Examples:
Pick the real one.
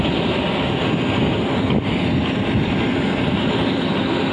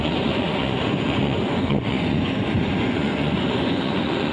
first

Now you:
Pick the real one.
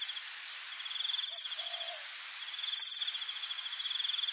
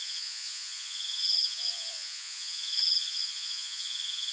first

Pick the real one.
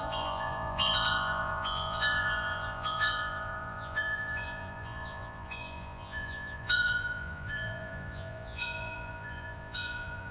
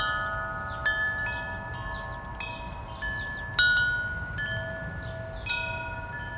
second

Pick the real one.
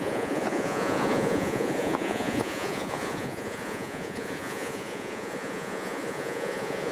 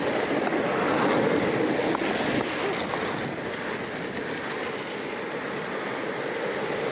second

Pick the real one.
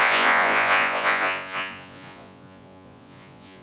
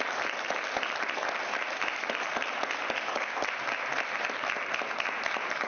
second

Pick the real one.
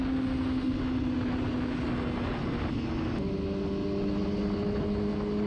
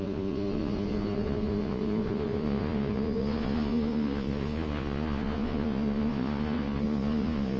first